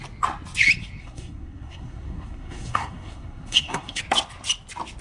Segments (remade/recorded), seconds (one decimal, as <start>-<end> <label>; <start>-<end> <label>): 0.0-1.0 recorded; 1.0-4.0 remade; 4.0-5.0 recorded